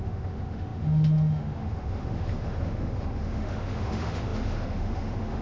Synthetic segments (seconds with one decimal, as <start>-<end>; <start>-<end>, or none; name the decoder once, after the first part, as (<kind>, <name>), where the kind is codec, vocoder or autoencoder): 0.0-5.4 (autoencoder, DAC-VAE)